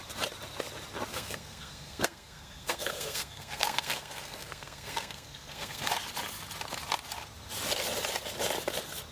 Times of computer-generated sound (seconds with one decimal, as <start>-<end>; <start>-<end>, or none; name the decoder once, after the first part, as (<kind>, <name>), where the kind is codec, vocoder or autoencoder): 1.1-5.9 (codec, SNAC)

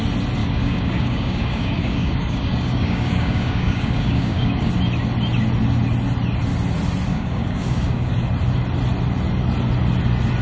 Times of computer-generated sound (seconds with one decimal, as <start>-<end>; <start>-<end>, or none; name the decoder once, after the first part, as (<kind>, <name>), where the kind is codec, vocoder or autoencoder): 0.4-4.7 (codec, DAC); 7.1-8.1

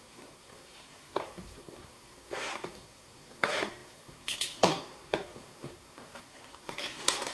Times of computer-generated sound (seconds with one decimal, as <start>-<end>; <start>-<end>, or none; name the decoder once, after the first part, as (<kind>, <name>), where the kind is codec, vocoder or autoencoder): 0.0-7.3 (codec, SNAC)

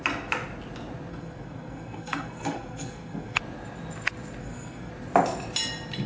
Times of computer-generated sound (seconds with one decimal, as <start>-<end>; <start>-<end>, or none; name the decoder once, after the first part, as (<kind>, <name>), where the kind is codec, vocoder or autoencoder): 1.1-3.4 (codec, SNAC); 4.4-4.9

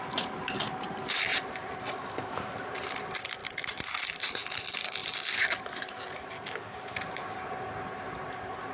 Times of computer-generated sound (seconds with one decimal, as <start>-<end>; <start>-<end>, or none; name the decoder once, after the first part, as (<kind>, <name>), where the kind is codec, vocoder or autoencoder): 1.3-2.6 (vocoder, BigVGAN v2)

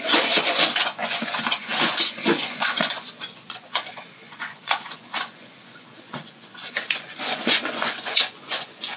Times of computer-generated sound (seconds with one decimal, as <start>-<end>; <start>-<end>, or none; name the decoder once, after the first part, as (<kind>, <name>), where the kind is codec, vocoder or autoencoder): 0.0-9.0 (vocoder, Vocos)

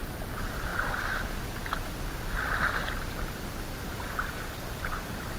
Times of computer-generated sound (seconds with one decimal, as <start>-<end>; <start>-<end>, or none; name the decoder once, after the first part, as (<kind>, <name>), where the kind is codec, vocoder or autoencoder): 0.0-0.7 (vocoder, BigVGAN v2); 3.9-5.4

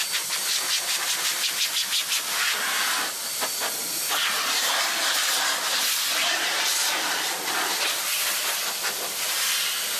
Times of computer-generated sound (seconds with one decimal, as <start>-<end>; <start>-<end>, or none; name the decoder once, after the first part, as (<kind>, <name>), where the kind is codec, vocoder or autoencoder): none